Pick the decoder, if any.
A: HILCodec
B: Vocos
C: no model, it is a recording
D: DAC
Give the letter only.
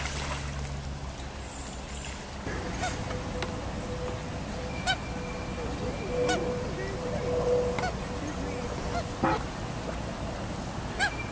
C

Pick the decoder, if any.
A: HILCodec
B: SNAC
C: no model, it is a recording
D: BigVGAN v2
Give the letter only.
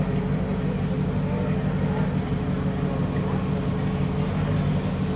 C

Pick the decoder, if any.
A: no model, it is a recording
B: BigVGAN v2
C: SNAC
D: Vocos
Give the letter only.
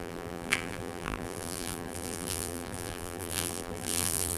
B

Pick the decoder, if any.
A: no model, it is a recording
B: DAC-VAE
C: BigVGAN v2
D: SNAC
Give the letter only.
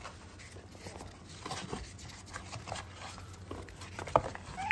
A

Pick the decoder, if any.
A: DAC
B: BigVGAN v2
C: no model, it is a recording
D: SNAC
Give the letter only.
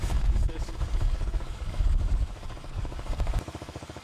A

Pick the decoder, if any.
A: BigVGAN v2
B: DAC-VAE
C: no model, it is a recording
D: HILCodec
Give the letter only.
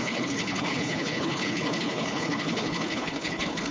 D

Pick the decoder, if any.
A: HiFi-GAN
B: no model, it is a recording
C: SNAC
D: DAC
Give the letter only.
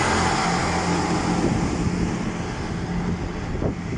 B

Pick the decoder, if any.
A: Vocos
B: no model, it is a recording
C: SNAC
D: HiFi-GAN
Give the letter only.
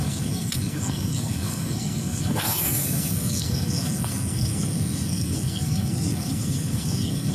C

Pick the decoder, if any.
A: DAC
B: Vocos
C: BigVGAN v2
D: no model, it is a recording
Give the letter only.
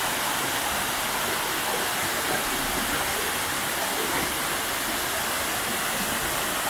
D